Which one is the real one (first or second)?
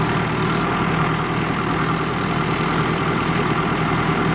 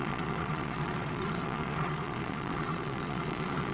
first